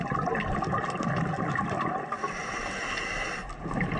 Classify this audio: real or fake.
real